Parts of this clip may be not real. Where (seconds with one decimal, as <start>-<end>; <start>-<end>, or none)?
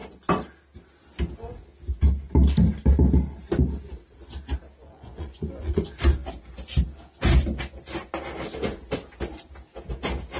4.8-5.8